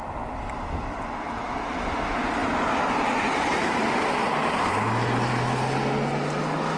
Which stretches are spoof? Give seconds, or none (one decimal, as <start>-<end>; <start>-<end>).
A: 2.4-4.3